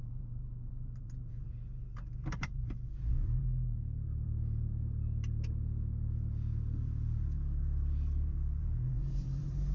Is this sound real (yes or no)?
no